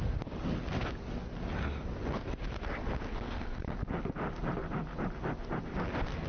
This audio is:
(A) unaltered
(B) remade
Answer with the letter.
A